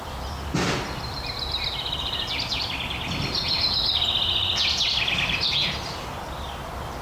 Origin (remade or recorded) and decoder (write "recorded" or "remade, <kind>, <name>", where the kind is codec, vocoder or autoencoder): recorded